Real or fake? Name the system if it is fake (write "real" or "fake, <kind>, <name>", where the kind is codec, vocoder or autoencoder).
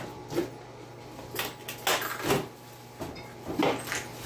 real